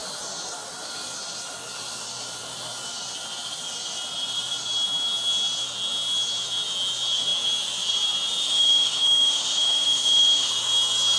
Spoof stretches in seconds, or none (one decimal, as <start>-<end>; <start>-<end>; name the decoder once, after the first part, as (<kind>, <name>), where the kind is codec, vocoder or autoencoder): 8.4-10.5 (autoencoder, DAC-VAE)